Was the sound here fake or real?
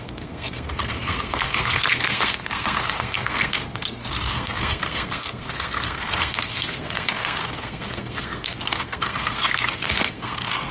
fake